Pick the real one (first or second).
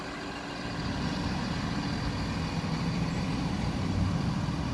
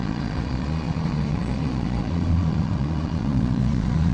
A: first